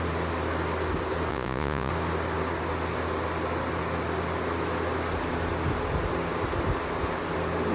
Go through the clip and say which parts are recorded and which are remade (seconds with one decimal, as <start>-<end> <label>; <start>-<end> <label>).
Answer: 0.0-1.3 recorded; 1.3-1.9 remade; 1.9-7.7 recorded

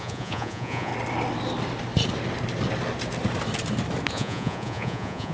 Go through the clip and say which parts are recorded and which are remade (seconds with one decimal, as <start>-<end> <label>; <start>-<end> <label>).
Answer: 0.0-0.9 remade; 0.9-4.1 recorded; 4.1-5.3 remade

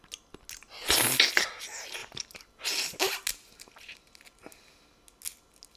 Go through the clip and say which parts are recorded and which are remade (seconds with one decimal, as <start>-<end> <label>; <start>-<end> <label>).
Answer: 0.0-2.0 recorded; 2.0-2.7 remade; 2.7-5.8 recorded